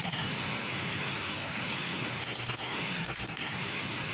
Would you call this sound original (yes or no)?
no